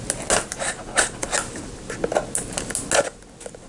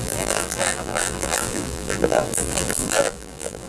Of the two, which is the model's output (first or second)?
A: second